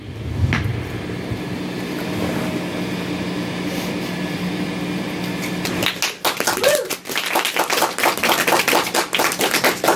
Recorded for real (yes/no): yes